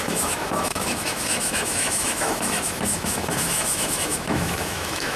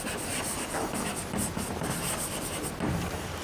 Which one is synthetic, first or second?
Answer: first